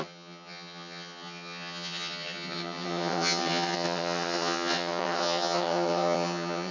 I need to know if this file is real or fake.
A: fake